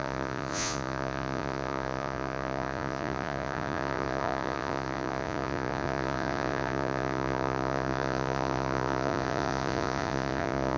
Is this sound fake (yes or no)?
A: yes